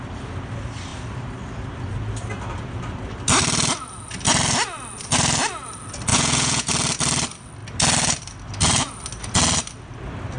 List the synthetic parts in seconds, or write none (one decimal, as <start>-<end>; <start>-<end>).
6.1-6.7